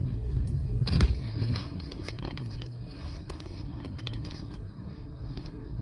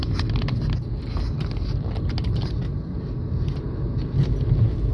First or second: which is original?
second